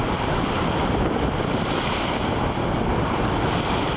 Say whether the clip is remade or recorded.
remade